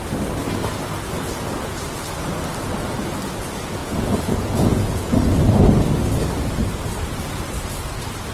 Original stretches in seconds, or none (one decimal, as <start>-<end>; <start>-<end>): 0.0-3.8; 5.1-8.3

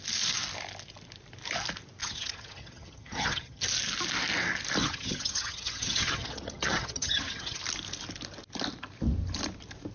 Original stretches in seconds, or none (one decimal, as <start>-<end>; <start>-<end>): 0.0-2.0; 3.6-4.8; 7.6-9.9